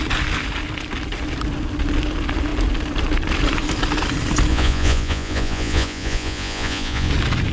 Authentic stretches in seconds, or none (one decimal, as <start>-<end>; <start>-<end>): 0.0-4.5; 7.1-7.5